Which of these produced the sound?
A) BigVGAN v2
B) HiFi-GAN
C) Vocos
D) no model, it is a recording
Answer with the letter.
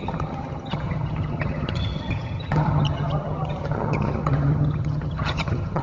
B